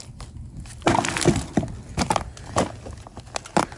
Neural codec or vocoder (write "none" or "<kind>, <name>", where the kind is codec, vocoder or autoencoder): none